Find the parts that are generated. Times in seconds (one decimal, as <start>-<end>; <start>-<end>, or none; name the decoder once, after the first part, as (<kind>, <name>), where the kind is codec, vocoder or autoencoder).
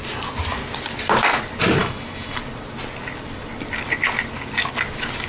1.8-2.4 (autoencoder, DAC-VAE)